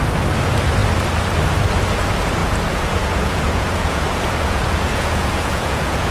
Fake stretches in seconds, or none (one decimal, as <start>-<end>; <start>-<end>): 2.4-6.1